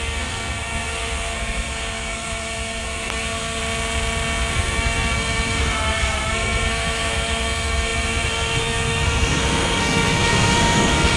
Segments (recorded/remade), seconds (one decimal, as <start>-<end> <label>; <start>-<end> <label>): 0.0-3.6 remade; 3.6-4.5 recorded; 4.5-11.2 remade